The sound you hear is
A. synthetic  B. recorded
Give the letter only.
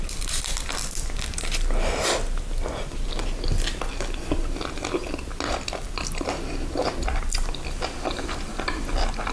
B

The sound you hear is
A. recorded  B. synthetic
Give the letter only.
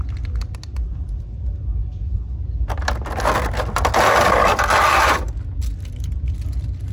A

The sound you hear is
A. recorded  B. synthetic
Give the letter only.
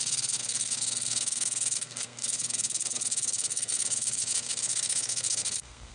B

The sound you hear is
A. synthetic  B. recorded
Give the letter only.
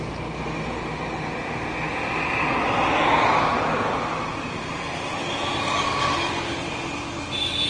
B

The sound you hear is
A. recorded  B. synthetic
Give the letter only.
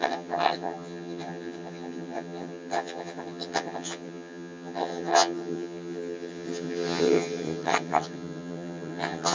B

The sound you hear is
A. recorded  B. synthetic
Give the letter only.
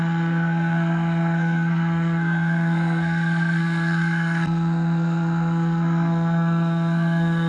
B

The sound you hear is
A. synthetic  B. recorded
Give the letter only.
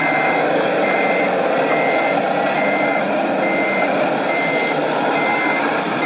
B